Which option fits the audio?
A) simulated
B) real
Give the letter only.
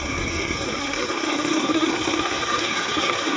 A